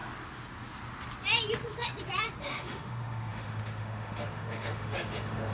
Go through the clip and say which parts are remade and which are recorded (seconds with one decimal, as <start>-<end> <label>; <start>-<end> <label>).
0.0-2.4 recorded; 2.4-5.5 remade